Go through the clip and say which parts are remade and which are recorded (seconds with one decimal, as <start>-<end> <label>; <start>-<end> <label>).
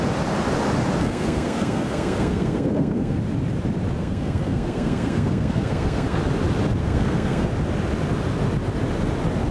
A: 0.0-1.0 recorded; 1.0-3.2 remade; 3.2-4.0 recorded; 4.0-6.2 remade; 6.2-6.8 recorded; 6.8-7.5 remade; 7.5-9.5 recorded